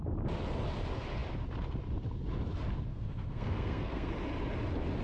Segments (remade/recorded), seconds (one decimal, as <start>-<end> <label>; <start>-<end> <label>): 0.0-2.9 recorded; 2.9-4.1 remade; 4.1-5.0 recorded